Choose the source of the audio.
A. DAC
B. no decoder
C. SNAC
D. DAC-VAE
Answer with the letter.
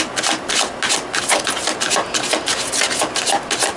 B